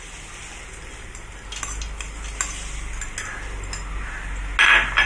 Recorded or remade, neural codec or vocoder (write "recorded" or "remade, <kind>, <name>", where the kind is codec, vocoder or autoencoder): recorded